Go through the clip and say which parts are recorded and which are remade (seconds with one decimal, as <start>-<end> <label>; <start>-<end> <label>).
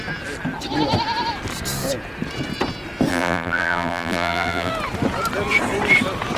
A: 0.0-3.1 recorded; 3.1-4.7 remade; 4.7-6.4 recorded